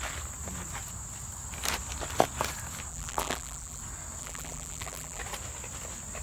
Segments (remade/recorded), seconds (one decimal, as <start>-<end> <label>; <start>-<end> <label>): 0.0-2.9 recorded; 2.9-3.8 remade; 3.8-4.2 recorded; 4.2-5.2 remade; 5.2-6.2 recorded